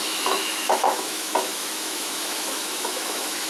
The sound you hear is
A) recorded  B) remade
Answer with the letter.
B